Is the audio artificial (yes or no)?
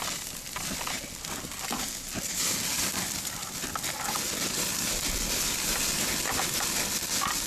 no